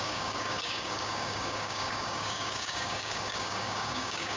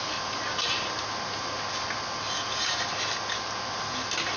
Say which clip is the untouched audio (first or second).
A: second